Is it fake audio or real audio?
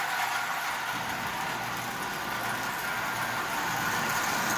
real